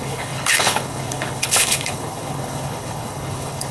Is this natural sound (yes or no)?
no